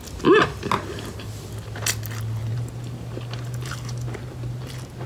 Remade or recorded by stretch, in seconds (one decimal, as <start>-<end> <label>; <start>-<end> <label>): 0.0-2.4 recorded; 2.4-4.6 remade; 4.6-5.1 recorded